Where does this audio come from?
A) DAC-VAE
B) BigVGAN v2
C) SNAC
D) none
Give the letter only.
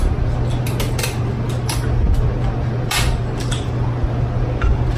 D